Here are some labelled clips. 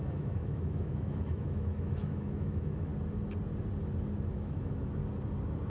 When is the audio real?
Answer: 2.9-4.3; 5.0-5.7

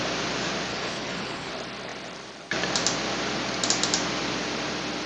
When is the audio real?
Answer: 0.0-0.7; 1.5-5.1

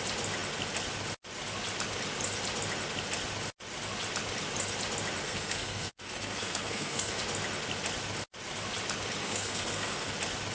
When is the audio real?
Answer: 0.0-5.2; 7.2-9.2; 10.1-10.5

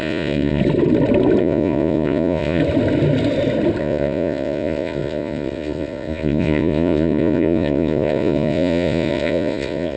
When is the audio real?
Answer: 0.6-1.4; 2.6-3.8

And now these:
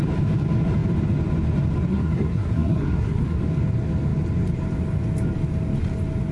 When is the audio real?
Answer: 0.0-1.9; 3.4-6.3